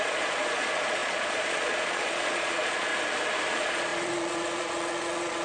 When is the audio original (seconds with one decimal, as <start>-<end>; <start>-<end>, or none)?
2.9-3.5